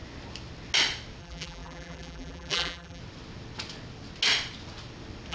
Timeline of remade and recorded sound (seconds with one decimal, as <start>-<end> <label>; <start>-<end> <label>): 0.0-1.2 recorded; 1.2-3.0 remade; 3.0-5.3 recorded